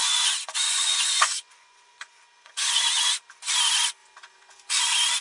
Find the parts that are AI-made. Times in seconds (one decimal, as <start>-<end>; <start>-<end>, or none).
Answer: 0.0-3.1; 4.0-4.8